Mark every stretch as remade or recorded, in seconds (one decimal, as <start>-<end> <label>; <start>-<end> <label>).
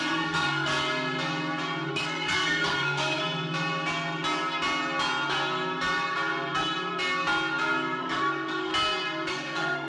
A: 0.0-0.7 remade; 0.7-1.9 recorded; 1.9-3.2 remade; 3.2-8.0 recorded; 8.0-8.7 remade; 8.7-9.3 recorded; 9.3-9.9 remade